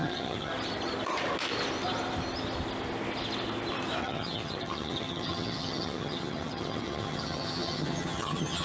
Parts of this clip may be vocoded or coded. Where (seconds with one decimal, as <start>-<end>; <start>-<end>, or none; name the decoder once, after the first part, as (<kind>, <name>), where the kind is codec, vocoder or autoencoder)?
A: 0.0-0.5 (vocoder, HiFi-GAN); 4.0-8.6